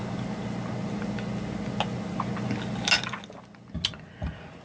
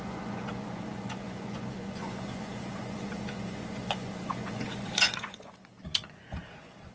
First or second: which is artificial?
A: second